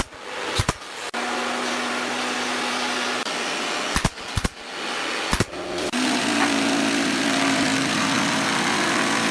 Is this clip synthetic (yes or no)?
no